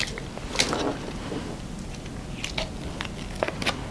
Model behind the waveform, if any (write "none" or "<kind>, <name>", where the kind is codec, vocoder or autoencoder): none